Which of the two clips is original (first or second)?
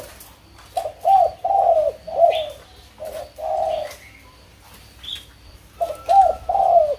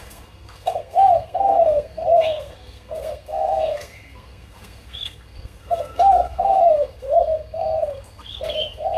first